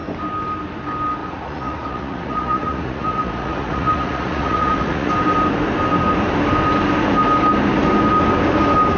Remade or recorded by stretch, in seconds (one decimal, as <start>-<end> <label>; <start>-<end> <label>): 0.0-1.2 recorded; 1.2-5.1 remade; 5.1-9.0 recorded